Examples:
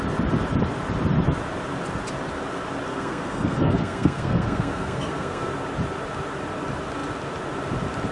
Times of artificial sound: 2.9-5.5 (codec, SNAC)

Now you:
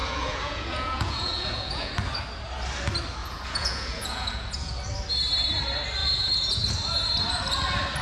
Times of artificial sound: 0.0-1.9 (vocoder, Vocos); 3.2-4.7; 6.0-6.6

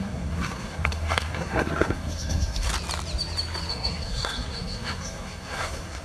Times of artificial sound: 0.0-2.7 (codec, SNAC); 3.7-6.0

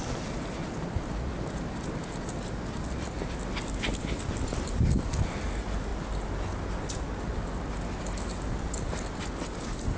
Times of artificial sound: none

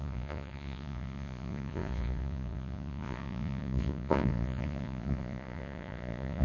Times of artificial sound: 0.0-6.4 (vocoder, Vocos)